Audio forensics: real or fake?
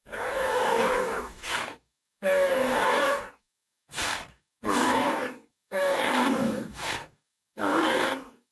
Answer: fake